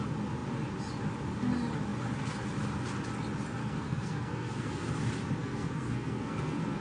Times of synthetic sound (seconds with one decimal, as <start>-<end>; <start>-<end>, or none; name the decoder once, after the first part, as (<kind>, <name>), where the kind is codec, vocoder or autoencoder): 3.6-4.9 (codec, SNAC); 5.4-6.8